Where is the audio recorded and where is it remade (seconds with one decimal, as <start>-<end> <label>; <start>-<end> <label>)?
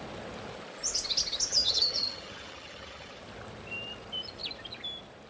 0.0-1.5 recorded; 1.5-3.2 remade; 3.2-5.3 recorded